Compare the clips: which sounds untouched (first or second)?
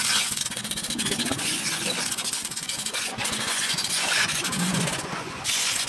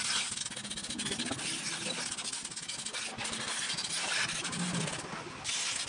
second